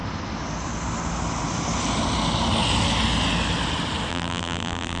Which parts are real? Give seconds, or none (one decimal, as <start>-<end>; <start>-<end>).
0.0-4.1